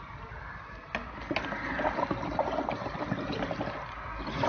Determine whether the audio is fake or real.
real